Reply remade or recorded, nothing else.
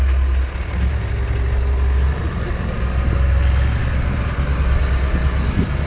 recorded